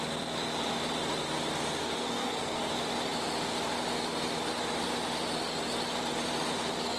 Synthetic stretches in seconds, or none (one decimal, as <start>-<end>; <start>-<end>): 1.8-2.7